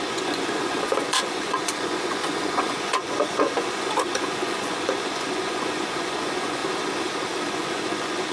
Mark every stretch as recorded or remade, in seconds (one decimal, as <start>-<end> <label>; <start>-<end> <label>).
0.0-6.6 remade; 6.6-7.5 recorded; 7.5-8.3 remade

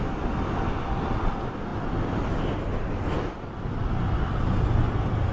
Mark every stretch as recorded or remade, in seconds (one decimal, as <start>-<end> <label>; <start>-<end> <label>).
0.0-5.3 recorded

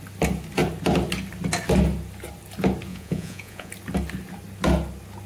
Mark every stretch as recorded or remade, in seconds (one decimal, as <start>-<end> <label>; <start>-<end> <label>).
0.0-2.9 recorded; 2.9-3.7 remade; 3.7-5.3 recorded

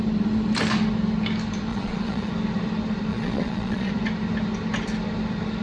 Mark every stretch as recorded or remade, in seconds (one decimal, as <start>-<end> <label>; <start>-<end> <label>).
0.0-1.7 recorded; 1.7-2.3 remade; 2.3-3.1 recorded; 3.1-3.9 remade; 3.9-5.6 recorded

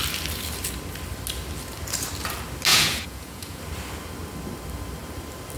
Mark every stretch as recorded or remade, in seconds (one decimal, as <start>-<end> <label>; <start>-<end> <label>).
0.0-2.7 recorded; 2.7-3.6 remade; 3.6-5.6 recorded

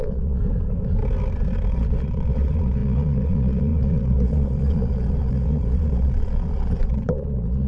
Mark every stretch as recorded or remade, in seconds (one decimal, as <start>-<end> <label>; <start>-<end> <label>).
0.0-0.4 remade; 0.4-1.7 recorded; 1.7-7.7 remade

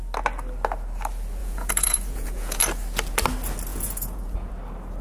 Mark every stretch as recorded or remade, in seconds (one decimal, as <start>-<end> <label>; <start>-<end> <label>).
0.0-1.4 recorded; 1.4-2.6 remade; 2.6-3.7 recorded; 3.7-4.5 remade; 4.5-5.0 recorded

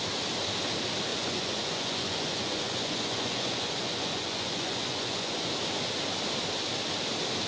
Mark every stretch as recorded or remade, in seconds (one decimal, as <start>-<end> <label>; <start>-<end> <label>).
0.0-1.1 recorded; 1.1-5.5 remade; 5.5-7.5 recorded